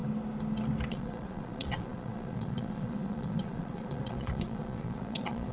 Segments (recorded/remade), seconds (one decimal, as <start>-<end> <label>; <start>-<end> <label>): 0.0-0.9 recorded; 0.9-5.5 remade